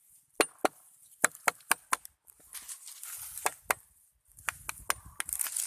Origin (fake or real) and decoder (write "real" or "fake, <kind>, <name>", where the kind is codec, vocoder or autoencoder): real